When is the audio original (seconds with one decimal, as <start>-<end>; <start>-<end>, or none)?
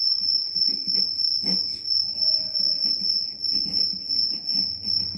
0.0-5.2